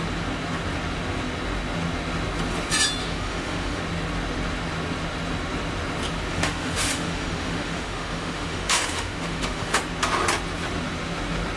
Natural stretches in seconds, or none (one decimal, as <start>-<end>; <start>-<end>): 0.0-3.0; 3.8-6.3; 9.8-11.6